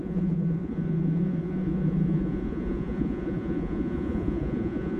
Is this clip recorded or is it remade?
remade